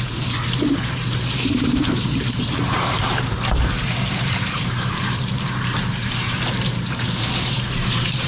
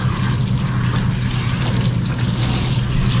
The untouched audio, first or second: second